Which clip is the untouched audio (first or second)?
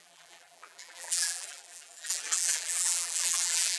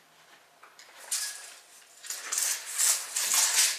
second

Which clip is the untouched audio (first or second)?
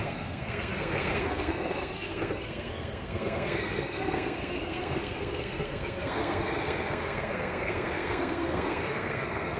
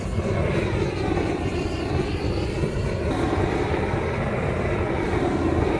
second